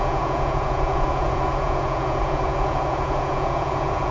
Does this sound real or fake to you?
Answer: fake